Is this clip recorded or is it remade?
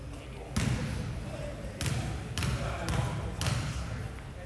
recorded